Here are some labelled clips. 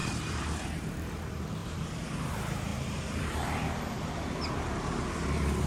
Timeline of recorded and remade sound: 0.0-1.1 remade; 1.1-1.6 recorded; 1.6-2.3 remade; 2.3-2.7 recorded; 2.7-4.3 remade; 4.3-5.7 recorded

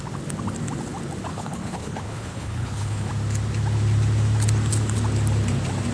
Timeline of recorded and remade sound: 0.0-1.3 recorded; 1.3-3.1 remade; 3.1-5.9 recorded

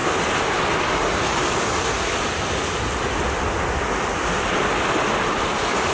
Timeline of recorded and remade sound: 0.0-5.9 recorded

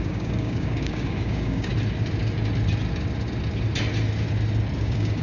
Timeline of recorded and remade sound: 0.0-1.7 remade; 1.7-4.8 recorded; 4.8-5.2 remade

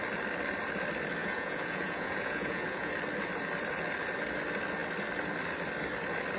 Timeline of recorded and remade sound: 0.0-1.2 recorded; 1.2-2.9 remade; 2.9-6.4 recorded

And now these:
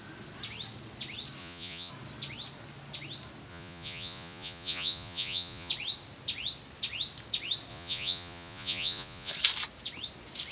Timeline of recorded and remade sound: 0.0-1.4 recorded; 1.4-1.9 remade; 1.9-3.5 recorded; 3.5-5.7 remade; 5.7-7.7 recorded; 7.7-9.3 remade; 9.3-10.5 recorded

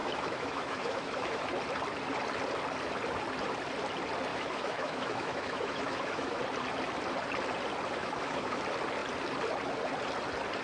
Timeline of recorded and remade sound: 0.0-1.4 remade; 1.4-4.3 recorded; 4.3-6.4 remade; 6.4-8.0 recorded; 8.0-8.6 remade; 8.6-10.6 recorded

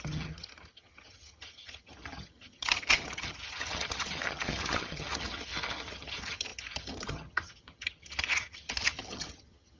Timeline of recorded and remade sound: 0.0-9.8 remade